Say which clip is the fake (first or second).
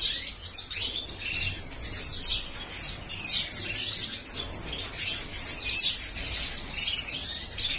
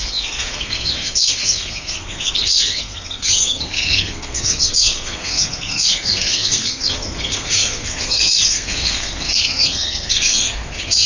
second